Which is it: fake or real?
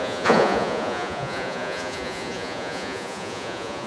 fake